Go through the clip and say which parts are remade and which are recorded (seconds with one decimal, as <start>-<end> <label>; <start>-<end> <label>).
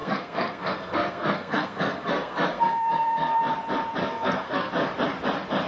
0.0-3.4 remade; 3.4-4.0 recorded; 4.0-4.7 remade; 4.7-5.7 recorded